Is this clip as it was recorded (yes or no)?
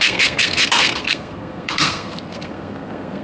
no